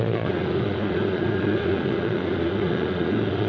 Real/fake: fake